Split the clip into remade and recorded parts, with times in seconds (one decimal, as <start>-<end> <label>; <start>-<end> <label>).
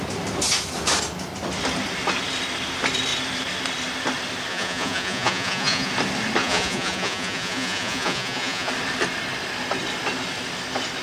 0.0-4.5 recorded; 4.5-5.9 remade; 5.9-6.4 recorded; 6.4-8.7 remade; 8.7-11.0 recorded